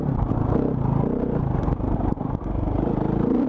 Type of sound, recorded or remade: recorded